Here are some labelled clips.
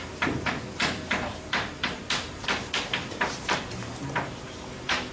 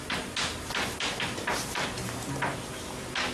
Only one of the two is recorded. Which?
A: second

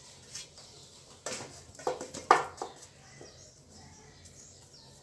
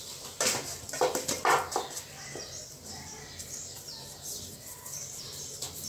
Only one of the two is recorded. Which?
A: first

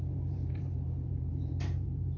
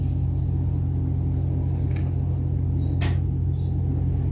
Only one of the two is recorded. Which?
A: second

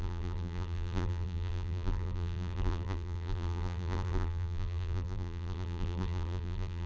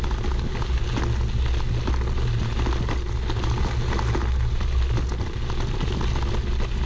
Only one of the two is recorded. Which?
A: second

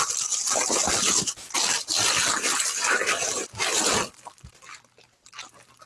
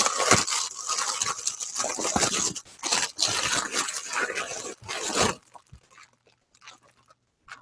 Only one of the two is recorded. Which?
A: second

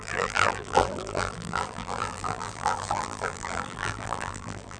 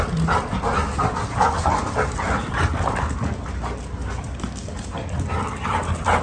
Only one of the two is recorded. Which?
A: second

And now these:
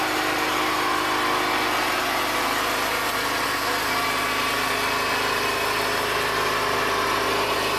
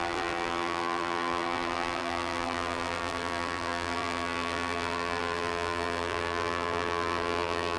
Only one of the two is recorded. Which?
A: first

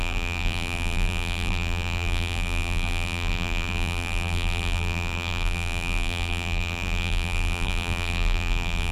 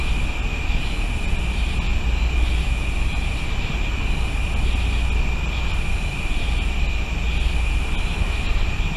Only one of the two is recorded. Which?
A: second